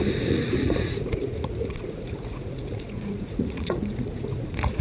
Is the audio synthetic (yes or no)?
yes